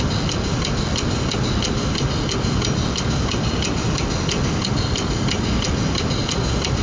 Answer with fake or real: real